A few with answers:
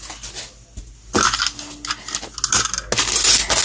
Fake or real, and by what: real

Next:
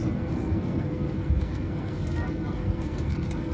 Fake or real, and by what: fake, codec, SNAC